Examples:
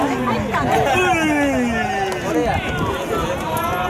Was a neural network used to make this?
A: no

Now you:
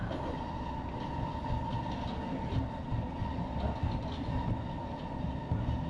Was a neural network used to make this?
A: no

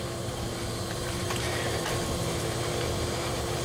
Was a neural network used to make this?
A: yes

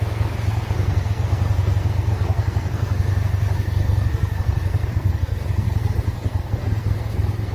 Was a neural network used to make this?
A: yes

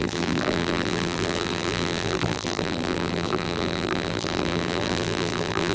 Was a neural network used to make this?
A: yes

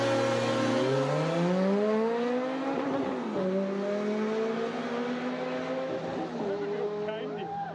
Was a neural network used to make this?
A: no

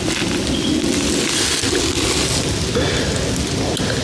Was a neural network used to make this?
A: no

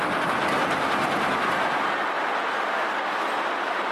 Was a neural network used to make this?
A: no